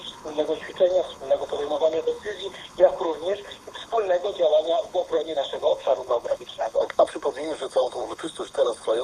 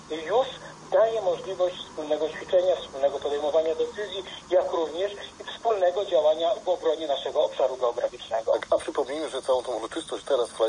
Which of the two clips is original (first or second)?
second